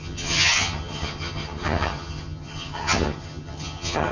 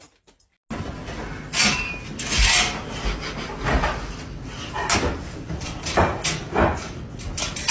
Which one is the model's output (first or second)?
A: first